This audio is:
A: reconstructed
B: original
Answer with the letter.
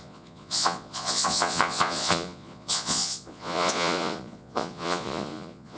A